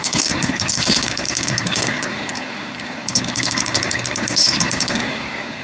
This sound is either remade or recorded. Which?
remade